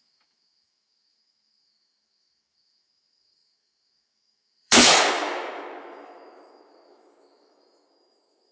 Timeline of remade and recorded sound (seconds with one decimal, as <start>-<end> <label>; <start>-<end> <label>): 0.0-8.5 remade